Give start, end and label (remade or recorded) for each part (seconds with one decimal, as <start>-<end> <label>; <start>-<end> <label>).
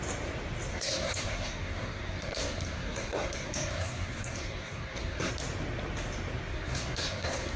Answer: 0.0-0.7 recorded; 0.7-5.3 remade; 5.3-6.5 recorded; 6.5-7.6 remade